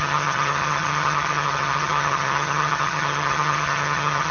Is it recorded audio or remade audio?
remade